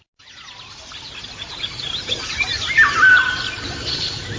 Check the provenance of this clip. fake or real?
real